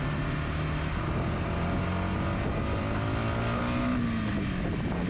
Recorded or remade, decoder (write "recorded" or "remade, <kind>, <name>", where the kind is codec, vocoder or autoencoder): recorded